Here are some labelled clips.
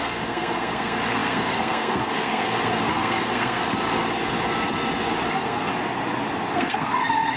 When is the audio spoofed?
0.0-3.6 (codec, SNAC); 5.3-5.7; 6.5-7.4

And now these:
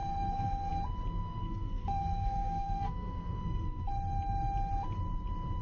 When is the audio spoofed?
0.0-0.7 (codec, SNAC); 1.2-3.9